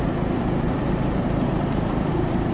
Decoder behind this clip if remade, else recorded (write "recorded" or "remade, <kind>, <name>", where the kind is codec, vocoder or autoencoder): remade, vocoder, BigVGAN v2